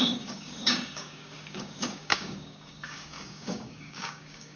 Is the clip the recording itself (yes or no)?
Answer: no